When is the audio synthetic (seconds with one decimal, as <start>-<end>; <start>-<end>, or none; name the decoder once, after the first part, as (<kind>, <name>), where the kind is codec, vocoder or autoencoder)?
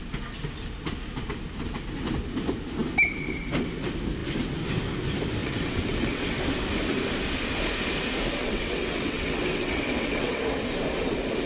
5.4-6.4 (vocoder, WaveNeXt); 8.4-10.4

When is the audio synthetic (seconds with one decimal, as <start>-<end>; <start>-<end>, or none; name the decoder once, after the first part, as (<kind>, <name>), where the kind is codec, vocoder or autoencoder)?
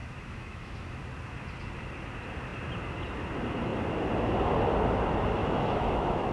0.0-1.0 (autoencoder, DAC-VAE); 5.4-6.3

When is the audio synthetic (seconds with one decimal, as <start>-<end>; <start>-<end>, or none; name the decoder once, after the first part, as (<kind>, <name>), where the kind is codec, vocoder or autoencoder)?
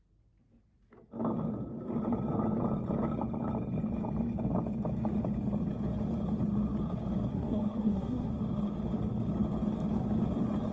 7.3-8.3 (codec, SNAC)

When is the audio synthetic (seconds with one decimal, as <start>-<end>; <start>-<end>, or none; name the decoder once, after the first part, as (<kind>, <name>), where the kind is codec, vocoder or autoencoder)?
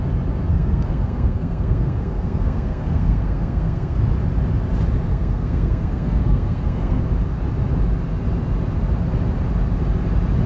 0.5-4.0 (codec, SNAC); 5.1-7.0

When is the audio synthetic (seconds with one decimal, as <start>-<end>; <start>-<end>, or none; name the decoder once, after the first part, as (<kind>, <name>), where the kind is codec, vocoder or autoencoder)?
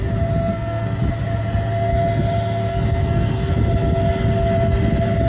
0.5-1.0 (codec, SNAC); 2.7-3.5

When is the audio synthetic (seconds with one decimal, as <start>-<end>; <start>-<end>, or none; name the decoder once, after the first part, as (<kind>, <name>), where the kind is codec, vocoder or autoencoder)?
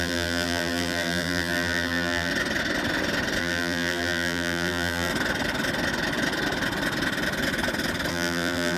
0.0-2.3 (vocoder, BigVGAN v2); 3.4-5.1; 8.1-8.8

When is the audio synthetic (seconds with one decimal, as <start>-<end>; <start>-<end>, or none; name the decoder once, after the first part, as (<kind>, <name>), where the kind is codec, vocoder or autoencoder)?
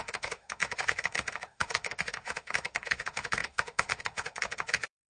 0.0-5.1 (autoencoder, DAC-VAE)